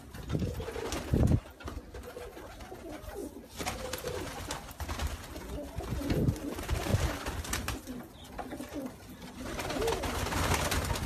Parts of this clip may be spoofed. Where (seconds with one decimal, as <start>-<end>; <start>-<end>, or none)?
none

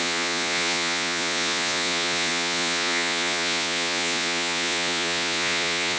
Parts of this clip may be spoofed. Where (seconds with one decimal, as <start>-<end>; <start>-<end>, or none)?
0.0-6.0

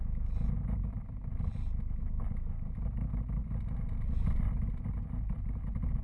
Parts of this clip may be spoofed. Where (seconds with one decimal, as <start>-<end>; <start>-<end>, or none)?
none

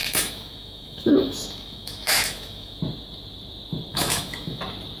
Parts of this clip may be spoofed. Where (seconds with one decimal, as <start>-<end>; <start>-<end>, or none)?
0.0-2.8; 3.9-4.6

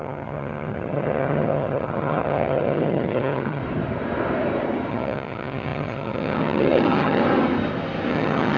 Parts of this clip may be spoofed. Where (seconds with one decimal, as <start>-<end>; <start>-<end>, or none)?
0.0-3.6; 4.9-7.2; 8.1-8.6